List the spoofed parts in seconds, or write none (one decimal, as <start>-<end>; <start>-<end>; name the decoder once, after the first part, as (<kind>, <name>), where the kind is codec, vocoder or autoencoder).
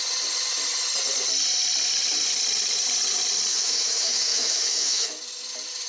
3.5-5.1 (autoencoder, DAC-VAE)